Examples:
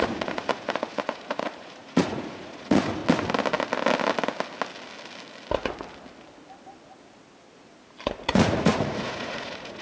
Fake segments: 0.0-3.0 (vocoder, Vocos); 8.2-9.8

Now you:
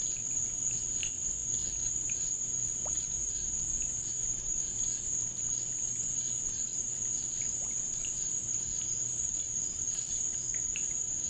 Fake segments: none

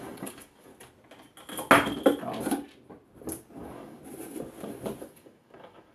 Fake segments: 0.0-0.7 (codec, DAC); 3.6-4.0; 5.0-5.9

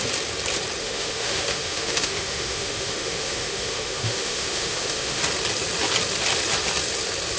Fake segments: 0.8-5.2 (autoencoder, DAC-VAE)

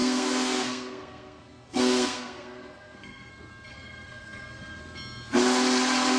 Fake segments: 0.0-3.3 (codec, SNAC); 3.7-4.8

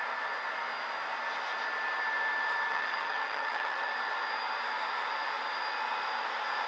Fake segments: 2.7-3.9 (vocoder, HiFi-GAN)

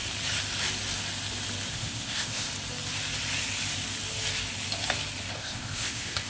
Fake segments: 1.7-2.5 (codec, ZipCodec); 5.3-6.3